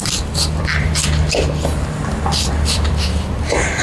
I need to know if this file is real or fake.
fake